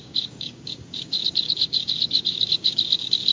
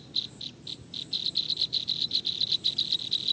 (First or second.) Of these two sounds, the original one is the second